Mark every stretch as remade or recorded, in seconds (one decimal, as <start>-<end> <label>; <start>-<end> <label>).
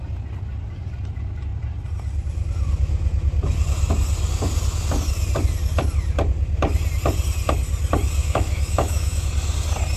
0.0-8.2 recorded; 8.2-9.3 remade; 9.3-10.0 recorded